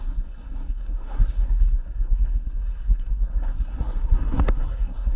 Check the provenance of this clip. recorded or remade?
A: remade